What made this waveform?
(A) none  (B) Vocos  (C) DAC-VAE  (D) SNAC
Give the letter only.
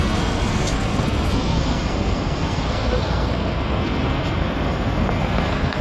D